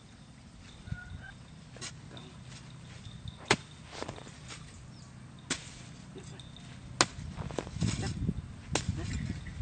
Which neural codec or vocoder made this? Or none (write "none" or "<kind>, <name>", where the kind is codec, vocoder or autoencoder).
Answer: none